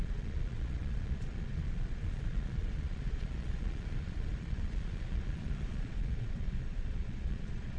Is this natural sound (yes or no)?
no